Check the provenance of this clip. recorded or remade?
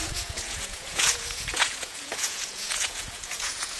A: remade